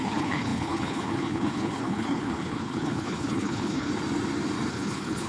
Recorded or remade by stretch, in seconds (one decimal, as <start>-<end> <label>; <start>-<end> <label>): 0.0-3.9 remade; 3.9-4.7 recorded; 4.7-5.3 remade